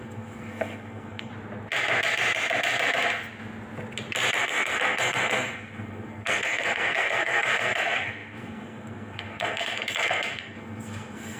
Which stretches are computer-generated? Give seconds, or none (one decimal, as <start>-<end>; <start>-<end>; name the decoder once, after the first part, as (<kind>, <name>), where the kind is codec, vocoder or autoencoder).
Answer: 0.0-1.3 (codec, SNAC); 4.4-11.4